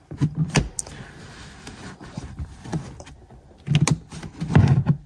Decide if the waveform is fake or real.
real